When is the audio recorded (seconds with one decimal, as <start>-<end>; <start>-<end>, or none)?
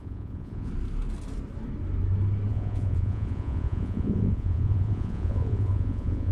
0.7-2.5